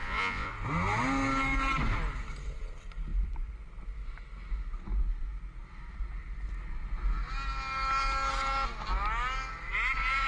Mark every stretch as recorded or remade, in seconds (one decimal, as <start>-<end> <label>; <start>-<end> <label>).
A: 0.0-0.5 remade; 0.5-10.3 recorded